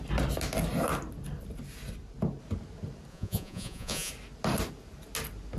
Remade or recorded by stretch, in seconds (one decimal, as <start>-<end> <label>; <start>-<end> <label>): 0.0-3.1 recorded; 3.1-4.1 remade; 4.1-5.6 recorded